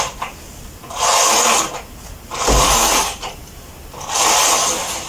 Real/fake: real